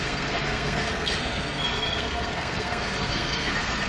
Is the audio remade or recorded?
remade